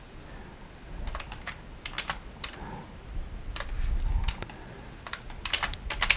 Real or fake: real